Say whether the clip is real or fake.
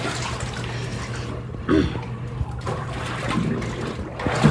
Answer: real